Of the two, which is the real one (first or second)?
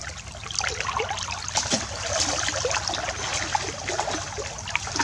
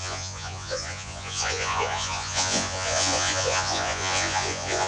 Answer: first